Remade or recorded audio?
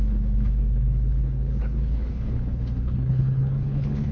remade